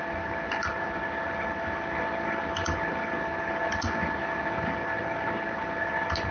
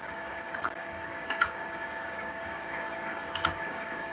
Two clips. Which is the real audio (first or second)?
first